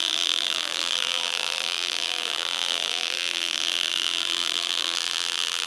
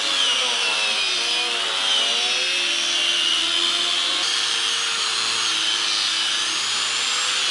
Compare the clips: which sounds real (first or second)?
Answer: second